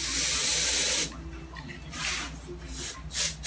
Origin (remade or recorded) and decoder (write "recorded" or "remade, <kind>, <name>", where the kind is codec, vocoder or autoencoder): recorded